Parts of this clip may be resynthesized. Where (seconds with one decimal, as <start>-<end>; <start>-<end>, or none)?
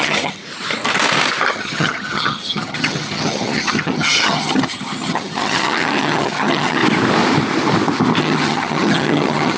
0.0-0.4; 1.5-6.8; 8.2-9.6